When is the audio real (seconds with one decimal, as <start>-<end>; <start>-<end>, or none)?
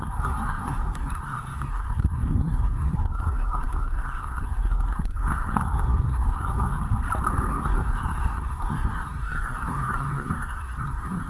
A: 6.8-7.5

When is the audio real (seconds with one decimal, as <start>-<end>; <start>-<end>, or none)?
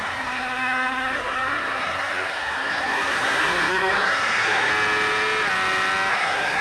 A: 4.7-6.1